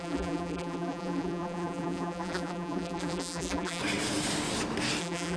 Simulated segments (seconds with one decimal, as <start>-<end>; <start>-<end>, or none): 0.0-3.8; 5.0-5.4